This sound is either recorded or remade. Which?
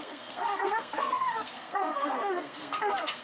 remade